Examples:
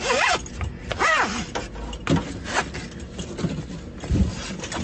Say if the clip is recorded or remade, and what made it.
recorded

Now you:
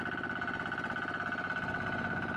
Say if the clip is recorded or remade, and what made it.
recorded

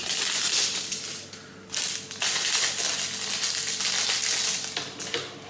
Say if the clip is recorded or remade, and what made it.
recorded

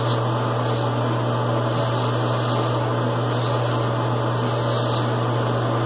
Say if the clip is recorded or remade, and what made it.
recorded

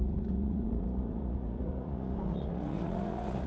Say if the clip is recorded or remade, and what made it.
remade, vocoder, Vocos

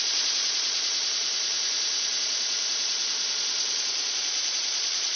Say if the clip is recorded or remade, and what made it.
remade, vocoder, Vocos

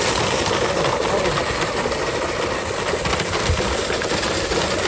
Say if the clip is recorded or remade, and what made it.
recorded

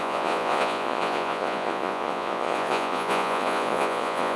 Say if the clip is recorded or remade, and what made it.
remade, vocoder, Vocos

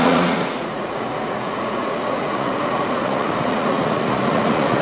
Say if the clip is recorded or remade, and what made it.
remade, vocoder, Vocos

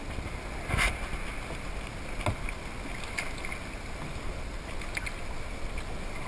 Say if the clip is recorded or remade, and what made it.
recorded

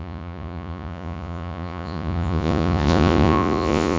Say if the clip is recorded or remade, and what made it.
remade, vocoder, Vocos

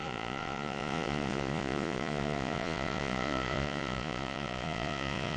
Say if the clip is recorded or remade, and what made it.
remade, vocoder, Vocos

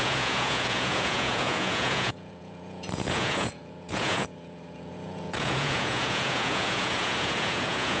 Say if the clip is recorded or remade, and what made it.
remade, vocoder, Vocos